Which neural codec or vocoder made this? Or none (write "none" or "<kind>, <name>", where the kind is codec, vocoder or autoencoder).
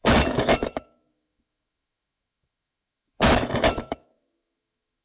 autoencoder, DAC-VAE